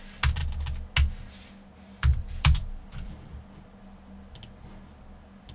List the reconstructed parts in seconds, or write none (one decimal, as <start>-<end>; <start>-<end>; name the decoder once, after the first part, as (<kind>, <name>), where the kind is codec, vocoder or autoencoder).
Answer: 2.1-3.1 (vocoder, BigVGAN v2)